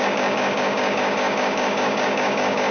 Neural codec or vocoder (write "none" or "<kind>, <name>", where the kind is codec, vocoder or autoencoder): codec, DAC